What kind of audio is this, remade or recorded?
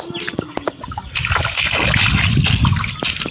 recorded